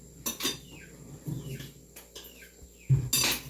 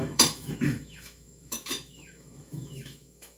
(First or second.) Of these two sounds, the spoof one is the second